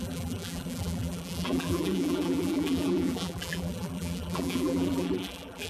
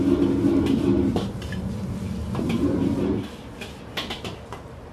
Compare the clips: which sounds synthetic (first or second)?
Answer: first